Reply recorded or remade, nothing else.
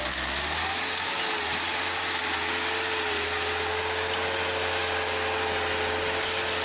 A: recorded